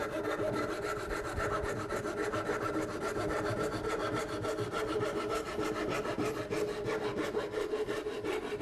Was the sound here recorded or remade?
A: recorded